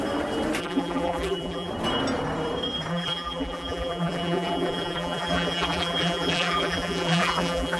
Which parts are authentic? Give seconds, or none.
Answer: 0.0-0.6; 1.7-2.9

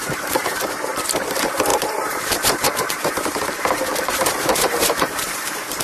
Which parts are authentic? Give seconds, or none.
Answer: 3.3-4.1

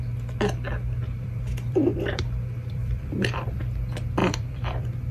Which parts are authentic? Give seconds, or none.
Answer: 0.0-1.0; 3.6-4.2

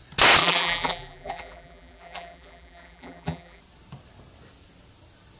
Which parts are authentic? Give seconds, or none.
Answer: 0.0-0.4; 3.6-5.4

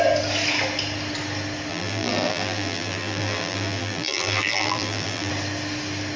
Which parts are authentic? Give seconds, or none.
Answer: 0.0-1.7; 5.3-6.2

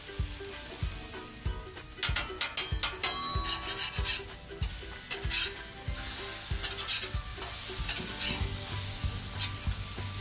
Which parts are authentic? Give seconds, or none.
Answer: 0.0-7.3; 7.8-10.2

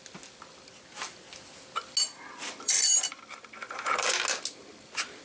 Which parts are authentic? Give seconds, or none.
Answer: 0.0-2.0; 4.1-5.2

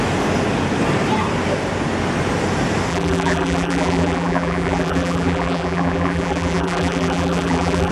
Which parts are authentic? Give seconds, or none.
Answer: 0.0-2.9